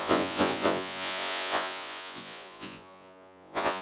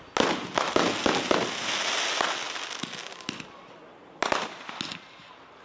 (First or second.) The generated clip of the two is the first